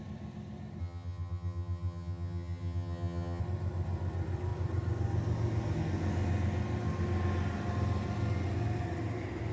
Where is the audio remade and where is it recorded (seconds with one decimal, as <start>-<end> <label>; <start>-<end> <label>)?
0.0-0.8 recorded; 0.8-3.4 remade; 3.4-9.5 recorded